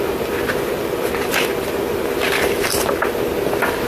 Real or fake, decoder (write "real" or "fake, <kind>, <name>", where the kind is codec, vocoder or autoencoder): real